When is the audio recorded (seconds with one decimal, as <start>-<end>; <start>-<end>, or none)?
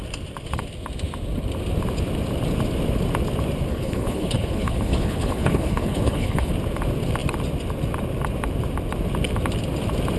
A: 0.0-3.7; 6.5-10.2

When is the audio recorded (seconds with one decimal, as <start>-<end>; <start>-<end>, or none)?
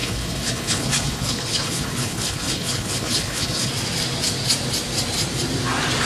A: 3.7-6.1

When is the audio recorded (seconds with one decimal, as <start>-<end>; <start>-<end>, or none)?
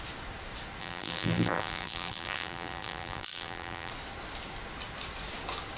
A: 0.0-0.8; 3.9-5.8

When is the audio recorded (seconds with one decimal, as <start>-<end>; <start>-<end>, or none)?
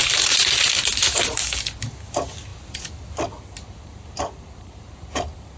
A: 0.0-5.6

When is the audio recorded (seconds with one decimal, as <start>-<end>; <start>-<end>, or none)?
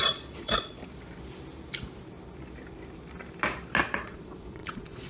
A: 0.8-3.9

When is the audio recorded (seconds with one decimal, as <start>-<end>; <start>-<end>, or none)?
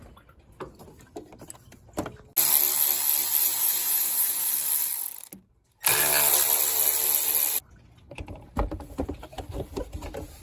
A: 0.0-3.4; 4.5-10.4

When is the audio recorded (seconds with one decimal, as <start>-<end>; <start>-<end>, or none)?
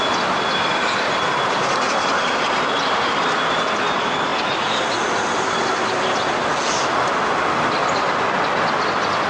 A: 0.0-9.3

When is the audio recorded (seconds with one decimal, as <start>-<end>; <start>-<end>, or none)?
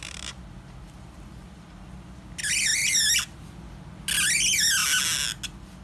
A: 0.0-5.8